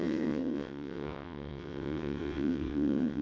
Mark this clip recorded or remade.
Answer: remade